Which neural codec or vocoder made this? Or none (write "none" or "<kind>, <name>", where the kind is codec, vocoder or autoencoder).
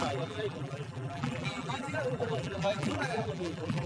vocoder, BigVGAN v2